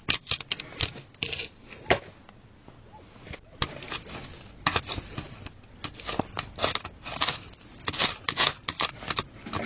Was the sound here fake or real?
real